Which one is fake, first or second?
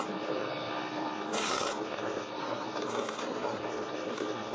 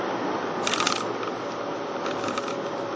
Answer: first